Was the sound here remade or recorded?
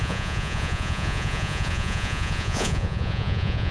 remade